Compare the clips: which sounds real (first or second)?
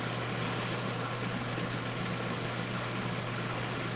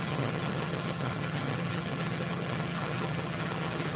first